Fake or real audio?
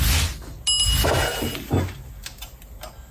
real